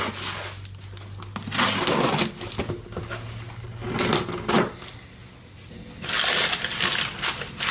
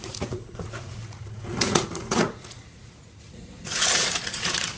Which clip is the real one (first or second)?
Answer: first